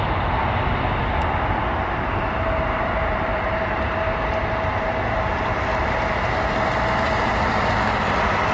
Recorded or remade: recorded